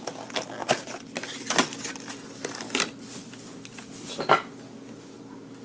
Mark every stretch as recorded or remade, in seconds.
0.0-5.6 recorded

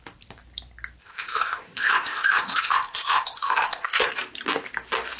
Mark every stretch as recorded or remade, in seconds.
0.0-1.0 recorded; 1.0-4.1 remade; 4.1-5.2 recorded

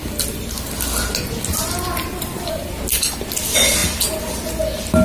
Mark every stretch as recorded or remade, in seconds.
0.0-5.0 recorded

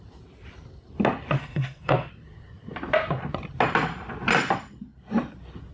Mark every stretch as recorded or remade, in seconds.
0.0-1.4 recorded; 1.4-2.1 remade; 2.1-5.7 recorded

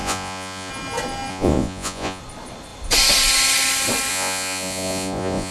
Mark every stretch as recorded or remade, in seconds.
0.0-0.7 remade; 0.7-1.3 recorded; 1.3-2.2 remade; 2.2-4.1 recorded; 4.1-5.5 remade

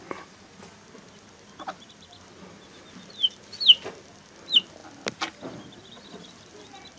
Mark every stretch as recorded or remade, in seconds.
0.0-7.0 recorded

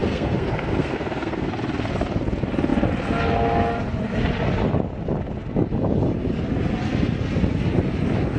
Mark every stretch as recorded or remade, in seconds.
0.0-1.5 remade; 1.5-8.4 recorded

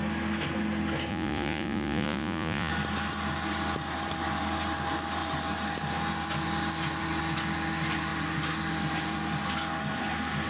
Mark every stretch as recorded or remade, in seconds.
0.0-1.1 recorded; 1.1-2.7 remade; 2.7-10.5 recorded